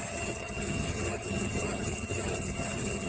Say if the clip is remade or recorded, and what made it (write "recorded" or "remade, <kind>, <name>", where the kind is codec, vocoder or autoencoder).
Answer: remade, vocoder, HiFi-GAN